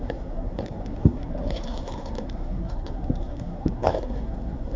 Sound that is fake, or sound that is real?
fake